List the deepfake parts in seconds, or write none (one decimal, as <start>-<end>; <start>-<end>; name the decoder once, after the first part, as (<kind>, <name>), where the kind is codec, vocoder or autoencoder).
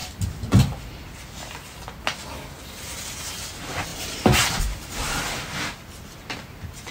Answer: none